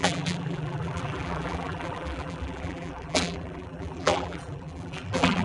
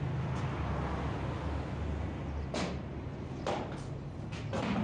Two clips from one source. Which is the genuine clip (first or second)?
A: second